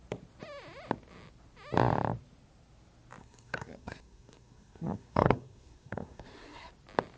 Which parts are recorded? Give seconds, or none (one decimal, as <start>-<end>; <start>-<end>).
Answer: 0.0-3.2; 6.7-7.2